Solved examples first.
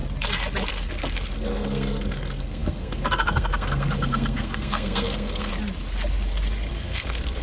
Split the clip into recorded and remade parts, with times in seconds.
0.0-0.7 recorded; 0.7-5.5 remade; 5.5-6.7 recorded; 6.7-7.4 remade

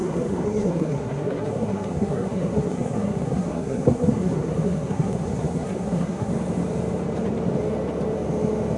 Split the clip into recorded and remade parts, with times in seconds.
0.0-6.3 remade; 6.3-8.8 recorded